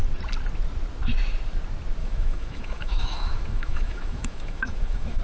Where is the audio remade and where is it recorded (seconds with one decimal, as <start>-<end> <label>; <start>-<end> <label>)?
0.0-2.0 recorded; 2.0-5.2 remade